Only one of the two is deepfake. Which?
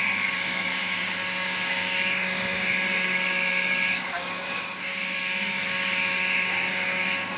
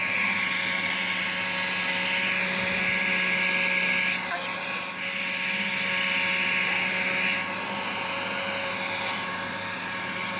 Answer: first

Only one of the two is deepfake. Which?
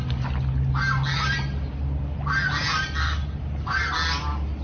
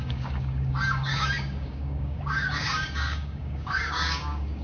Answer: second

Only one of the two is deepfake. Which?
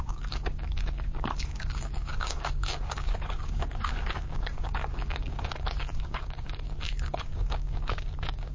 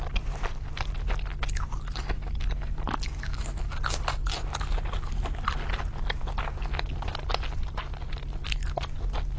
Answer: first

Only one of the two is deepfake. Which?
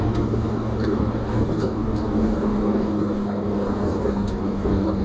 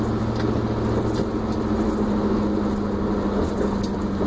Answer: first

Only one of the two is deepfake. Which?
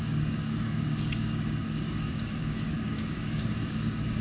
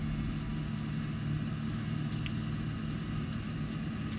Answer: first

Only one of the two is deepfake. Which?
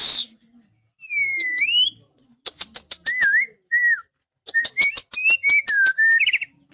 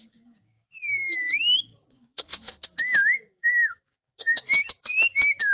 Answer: second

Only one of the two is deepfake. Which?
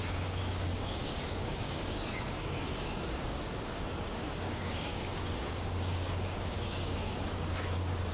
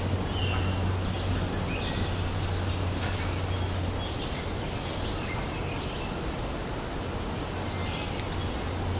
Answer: first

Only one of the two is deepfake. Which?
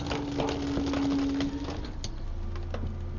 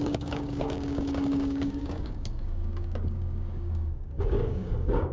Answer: second